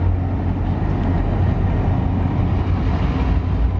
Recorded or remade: recorded